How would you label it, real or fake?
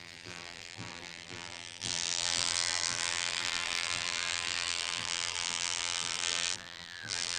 fake